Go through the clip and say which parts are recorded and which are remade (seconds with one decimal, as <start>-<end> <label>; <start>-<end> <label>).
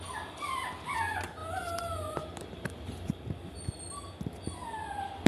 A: 0.0-5.3 recorded